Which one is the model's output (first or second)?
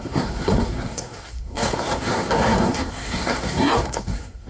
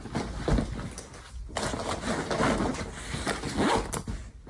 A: first